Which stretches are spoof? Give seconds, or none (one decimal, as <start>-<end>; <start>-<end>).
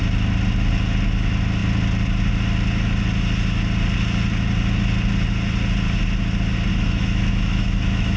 6.7-8.2